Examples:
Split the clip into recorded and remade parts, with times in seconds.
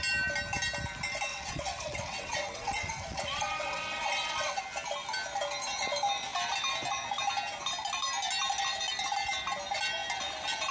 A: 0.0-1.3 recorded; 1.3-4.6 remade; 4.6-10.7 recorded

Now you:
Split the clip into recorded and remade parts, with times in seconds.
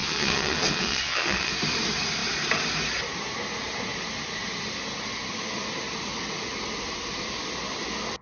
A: 0.0-1.5 remade; 1.5-8.2 recorded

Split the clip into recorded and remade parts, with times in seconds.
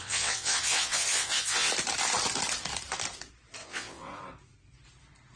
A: 0.0-1.7 remade; 1.7-3.6 recorded; 3.6-4.1 remade; 4.1-5.4 recorded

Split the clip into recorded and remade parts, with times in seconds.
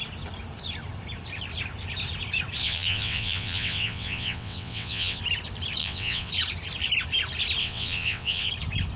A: 0.0-2.6 recorded; 2.6-5.2 remade; 5.2-5.8 recorded; 5.8-6.3 remade; 6.3-7.6 recorded; 7.6-8.5 remade; 8.5-9.0 recorded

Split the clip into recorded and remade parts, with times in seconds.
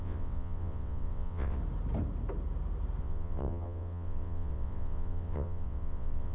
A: 0.0-1.6 remade; 1.6-3.0 recorded; 3.0-6.3 remade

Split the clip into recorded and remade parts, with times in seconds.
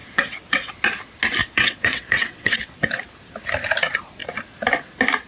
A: 0.0-0.7 remade; 0.7-1.4 recorded; 1.4-3.0 remade; 3.0-5.3 recorded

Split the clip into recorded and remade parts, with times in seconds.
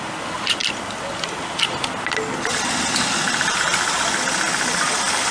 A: 0.0-5.3 recorded